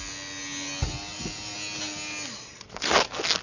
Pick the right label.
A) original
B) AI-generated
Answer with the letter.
A